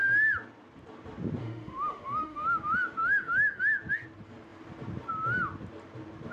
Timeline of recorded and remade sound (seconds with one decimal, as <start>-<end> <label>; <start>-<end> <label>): 0.0-1.4 recorded; 1.4-2.6 remade; 2.6-3.0 recorded; 3.0-3.6 remade; 3.6-6.3 recorded